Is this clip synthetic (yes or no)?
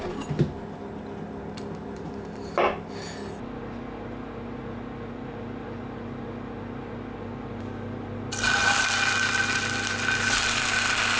no